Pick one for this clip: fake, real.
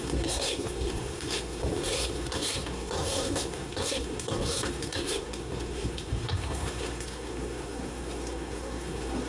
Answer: fake